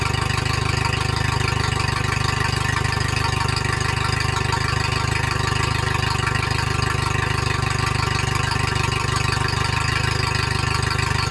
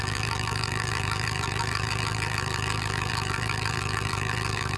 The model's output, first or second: second